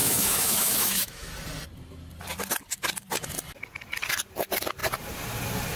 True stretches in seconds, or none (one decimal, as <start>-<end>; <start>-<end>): 1.3-5.8